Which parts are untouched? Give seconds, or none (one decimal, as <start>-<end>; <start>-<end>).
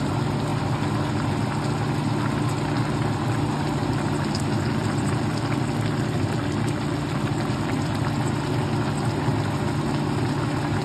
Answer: 0.0-4.8; 8.0-10.8